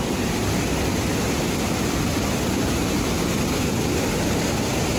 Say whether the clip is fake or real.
real